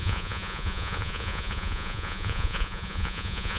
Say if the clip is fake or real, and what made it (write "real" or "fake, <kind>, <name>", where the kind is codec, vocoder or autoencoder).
fake, vocoder, Vocos